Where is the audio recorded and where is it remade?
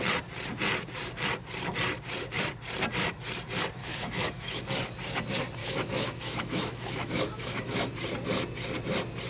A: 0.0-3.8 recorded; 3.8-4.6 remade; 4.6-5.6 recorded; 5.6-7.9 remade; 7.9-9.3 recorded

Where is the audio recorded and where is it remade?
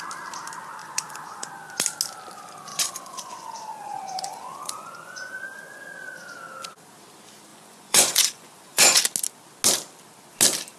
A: 0.0-0.8 recorded; 0.8-1.5 remade; 1.5-2.7 recorded; 2.7-5.8 remade; 5.8-7.5 recorded; 7.5-9.0 remade; 9.0-10.8 recorded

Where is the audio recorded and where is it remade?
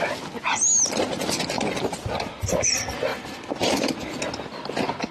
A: 0.0-3.1 recorded; 3.1-4.2 remade; 4.2-5.1 recorded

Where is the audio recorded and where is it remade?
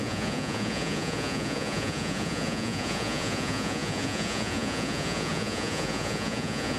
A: 0.0-6.8 remade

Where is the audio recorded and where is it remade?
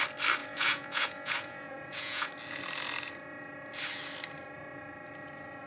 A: 0.0-0.4 recorded; 0.4-2.3 remade; 2.3-5.7 recorded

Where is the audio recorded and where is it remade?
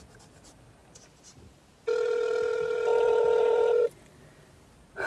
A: 0.0-5.1 recorded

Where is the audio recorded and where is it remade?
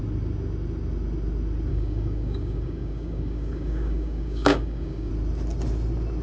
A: 0.0-1.7 recorded; 1.7-5.1 remade; 5.1-6.2 recorded